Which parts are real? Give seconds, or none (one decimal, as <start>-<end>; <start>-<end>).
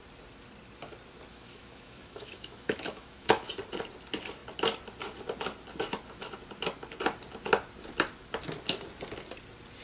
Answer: 0.0-1.3; 3.5-9.8